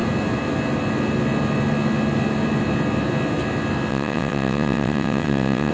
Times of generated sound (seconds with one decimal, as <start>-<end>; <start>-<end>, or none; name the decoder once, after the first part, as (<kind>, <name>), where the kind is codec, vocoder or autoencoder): 3.9-5.7 (vocoder, WaveNeXt)